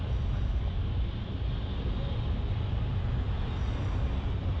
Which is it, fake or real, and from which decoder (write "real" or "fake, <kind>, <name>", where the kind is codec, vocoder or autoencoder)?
real